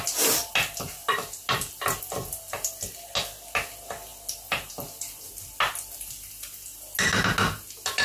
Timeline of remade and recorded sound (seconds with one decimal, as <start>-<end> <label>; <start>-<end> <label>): 0.0-8.0 recorded